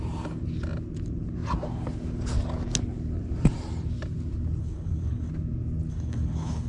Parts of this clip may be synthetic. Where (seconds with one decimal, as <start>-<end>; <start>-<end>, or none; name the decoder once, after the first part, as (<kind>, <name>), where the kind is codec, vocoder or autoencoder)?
4.6-5.3 (codec, HILCodec); 5.9-6.7